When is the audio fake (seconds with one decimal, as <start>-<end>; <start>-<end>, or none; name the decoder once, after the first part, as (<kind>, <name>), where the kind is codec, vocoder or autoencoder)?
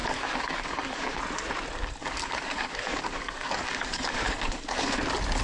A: 0.0-1.2 (codec, DAC); 2.0-5.0